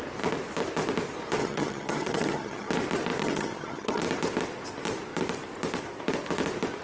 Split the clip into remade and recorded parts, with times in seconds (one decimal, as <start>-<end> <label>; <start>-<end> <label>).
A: 0.0-1.4 recorded; 1.4-2.7 remade; 2.7-3.2 recorded; 3.2-4.0 remade; 4.0-6.8 recorded